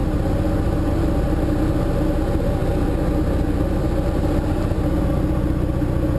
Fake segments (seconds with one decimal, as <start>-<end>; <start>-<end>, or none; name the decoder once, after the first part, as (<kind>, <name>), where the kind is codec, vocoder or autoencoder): none